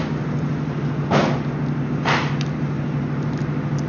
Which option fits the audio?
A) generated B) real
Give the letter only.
B